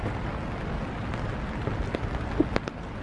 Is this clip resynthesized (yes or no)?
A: no